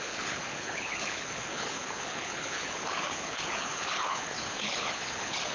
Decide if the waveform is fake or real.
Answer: fake